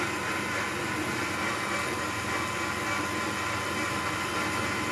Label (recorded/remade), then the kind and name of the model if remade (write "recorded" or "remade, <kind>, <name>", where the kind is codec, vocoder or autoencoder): recorded